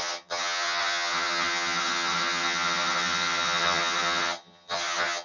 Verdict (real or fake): fake